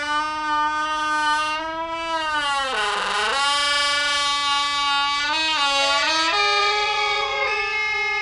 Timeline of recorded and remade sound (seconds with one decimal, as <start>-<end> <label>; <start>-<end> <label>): 0.0-6.6 recorded; 6.6-7.6 remade; 7.6-8.2 recorded